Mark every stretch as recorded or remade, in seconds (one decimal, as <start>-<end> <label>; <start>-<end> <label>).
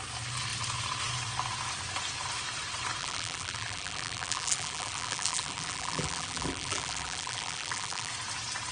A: 0.0-3.0 recorded; 3.0-8.1 remade; 8.1-8.7 recorded